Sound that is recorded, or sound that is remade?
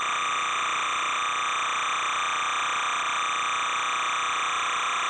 recorded